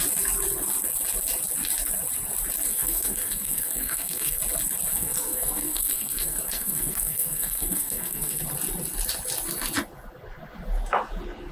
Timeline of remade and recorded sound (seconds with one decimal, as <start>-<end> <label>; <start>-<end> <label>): 0.0-2.7 recorded; 2.7-4.4 remade; 4.4-4.9 recorded; 4.9-8.4 remade; 8.4-11.5 recorded